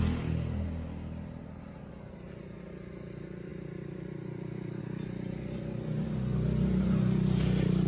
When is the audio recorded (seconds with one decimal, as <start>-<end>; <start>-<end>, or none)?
0.0-7.9